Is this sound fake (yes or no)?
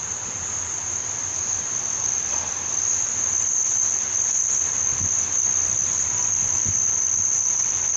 no